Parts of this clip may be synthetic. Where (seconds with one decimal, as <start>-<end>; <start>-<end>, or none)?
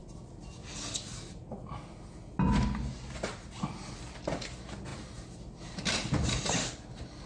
none